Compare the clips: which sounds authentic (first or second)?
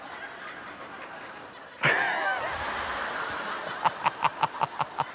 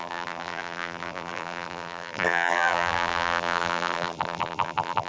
first